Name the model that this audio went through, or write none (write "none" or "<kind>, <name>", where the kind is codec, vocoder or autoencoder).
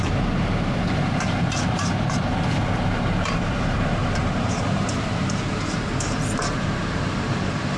vocoder, BigVGAN v2